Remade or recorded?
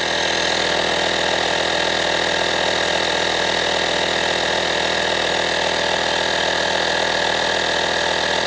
recorded